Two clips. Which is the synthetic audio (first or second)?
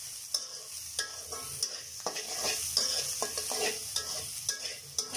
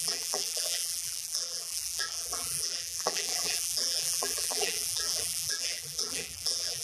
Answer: second